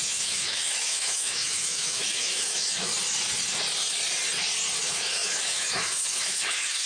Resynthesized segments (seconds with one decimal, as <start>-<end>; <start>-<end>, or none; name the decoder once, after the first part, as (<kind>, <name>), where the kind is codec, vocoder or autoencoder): 0.0-2.9 (autoencoder, DAC-VAE); 4.8-6.9